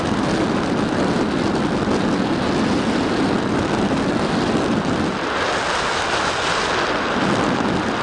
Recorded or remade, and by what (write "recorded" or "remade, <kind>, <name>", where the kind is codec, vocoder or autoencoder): recorded